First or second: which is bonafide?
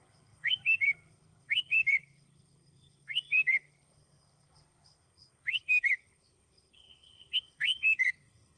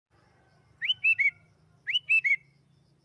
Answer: second